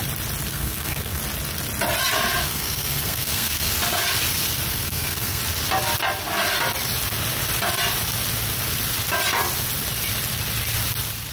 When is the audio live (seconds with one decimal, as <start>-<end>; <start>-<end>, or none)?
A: 0.0-0.5; 1.2-2.4; 3.7-4.7; 5.4-11.3